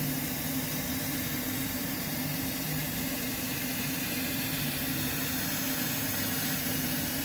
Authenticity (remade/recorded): remade